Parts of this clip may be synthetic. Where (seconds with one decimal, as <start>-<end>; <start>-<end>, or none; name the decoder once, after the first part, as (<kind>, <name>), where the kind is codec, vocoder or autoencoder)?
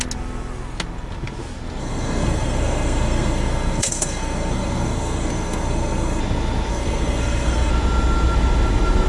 1.8-6.2 (codec, SNAC); 6.7-7.7